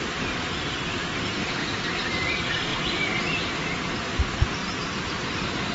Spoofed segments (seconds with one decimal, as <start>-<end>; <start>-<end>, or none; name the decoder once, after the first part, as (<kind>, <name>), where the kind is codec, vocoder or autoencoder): 1.6-2.3 (vocoder, BigVGAN v2); 2.7-3.2